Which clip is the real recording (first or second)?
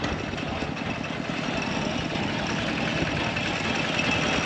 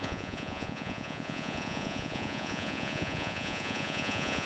first